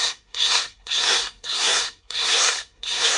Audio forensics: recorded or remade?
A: remade